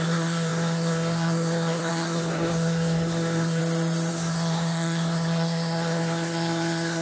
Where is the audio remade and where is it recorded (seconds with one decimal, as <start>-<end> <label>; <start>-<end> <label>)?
0.0-3.6 remade; 3.6-4.1 recorded; 4.1-7.0 remade

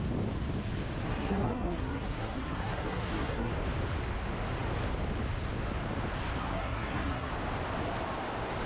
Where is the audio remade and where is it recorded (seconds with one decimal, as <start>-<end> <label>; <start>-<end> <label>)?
0.0-1.1 recorded; 1.1-3.5 remade; 3.5-6.4 recorded; 6.4-7.3 remade; 7.3-8.7 recorded